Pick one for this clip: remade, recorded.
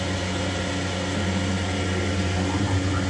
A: recorded